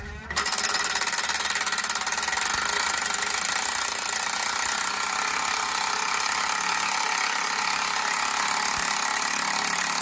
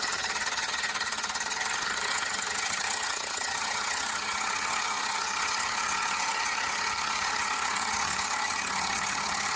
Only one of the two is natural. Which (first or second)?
first